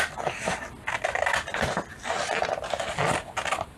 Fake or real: real